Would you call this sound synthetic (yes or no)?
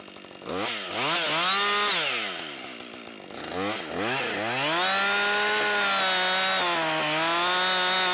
no